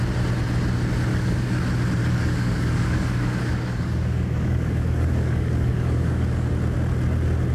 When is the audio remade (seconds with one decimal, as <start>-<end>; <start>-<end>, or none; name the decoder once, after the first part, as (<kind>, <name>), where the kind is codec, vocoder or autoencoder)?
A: 1.1-1.6 (codec, DAC); 2.0-6.5